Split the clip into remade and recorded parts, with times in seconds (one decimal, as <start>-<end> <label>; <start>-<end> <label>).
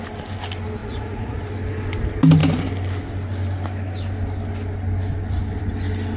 0.0-0.8 recorded; 0.8-1.4 remade; 1.4-6.2 recorded